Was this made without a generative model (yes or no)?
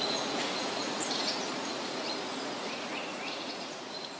no